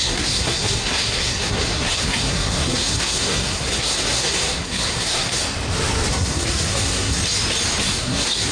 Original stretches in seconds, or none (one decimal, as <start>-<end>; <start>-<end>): 5.4-6.1; 7.2-8.0